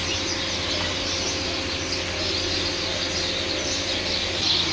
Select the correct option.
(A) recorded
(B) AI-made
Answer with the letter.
A